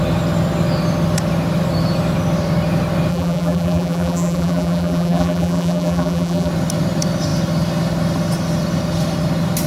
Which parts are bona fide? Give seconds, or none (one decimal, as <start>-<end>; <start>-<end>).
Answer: 0.0-3.1; 6.5-9.7